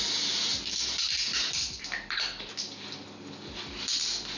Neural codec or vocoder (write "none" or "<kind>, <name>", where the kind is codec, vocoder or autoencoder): none